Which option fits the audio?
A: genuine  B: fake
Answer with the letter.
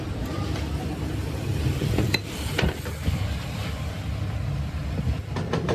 B